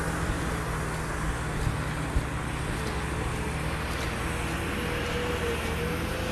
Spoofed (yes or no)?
no